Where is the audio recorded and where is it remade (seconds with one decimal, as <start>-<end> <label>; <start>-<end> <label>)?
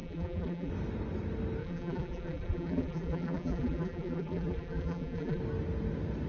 0.0-0.7 remade; 0.7-1.6 recorded; 1.6-5.4 remade; 5.4-6.3 recorded